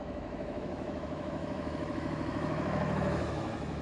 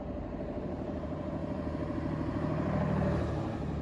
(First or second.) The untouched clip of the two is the second